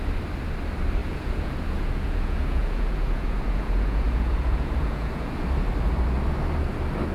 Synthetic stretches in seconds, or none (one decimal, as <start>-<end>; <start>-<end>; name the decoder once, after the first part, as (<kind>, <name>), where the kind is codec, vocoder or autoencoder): 1.0-5.3 (vocoder, Vocos)